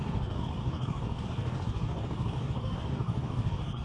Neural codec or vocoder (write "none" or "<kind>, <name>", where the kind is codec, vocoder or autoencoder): codec, DAC